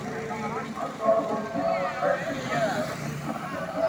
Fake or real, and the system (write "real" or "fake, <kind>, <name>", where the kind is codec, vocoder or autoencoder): real